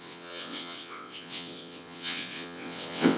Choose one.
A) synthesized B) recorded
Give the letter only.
A